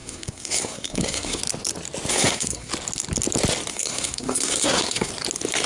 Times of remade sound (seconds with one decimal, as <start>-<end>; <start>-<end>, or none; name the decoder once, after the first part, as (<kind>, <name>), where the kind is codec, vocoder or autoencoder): 0.0-1.4 (codec, SNAC); 2.1-2.7; 3.7-5.1